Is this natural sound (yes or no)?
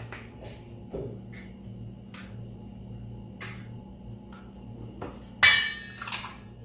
yes